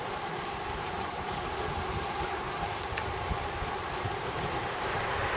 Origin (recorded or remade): remade